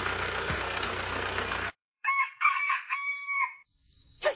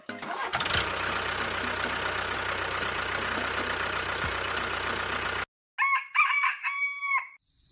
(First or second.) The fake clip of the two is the first